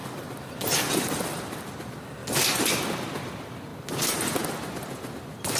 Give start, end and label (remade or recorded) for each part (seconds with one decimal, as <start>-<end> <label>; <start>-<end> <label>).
0.0-0.6 remade; 0.6-5.6 recorded